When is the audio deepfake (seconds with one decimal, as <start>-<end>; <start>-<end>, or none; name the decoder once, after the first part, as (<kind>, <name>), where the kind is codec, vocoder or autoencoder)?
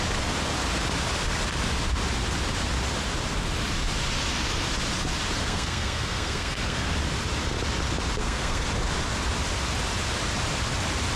5.4-6.9 (codec, SNAC); 8.2-8.7